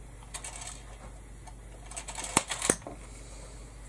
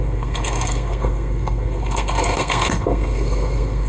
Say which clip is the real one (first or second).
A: first